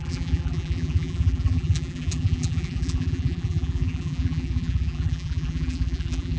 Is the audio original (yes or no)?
no